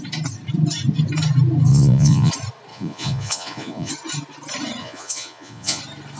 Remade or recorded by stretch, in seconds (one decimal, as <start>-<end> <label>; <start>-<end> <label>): 0.0-1.7 recorded; 1.7-2.3 remade; 2.3-2.7 recorded; 2.7-3.9 remade; 3.9-4.8 recorded; 4.8-5.8 remade; 5.8-6.2 recorded